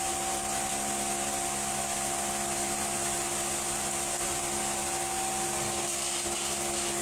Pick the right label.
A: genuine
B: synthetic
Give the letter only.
A